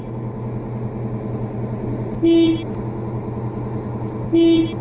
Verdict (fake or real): real